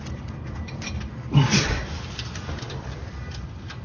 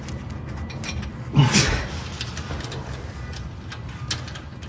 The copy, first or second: first